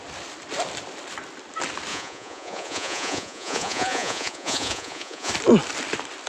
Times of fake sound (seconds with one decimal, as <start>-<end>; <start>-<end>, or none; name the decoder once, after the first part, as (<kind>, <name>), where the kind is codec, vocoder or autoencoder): 1.9-5.3 (vocoder, Vocos)